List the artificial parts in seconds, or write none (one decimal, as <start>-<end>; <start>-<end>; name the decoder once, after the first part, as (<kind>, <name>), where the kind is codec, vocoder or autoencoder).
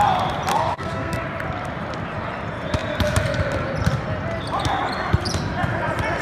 0.5-1.2 (codec, SNAC)